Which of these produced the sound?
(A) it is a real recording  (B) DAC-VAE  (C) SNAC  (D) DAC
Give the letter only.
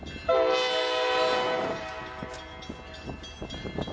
A